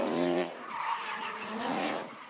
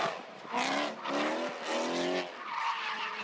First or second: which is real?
second